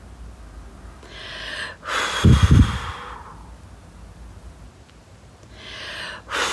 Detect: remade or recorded recorded